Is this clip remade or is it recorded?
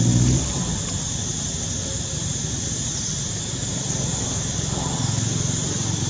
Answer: recorded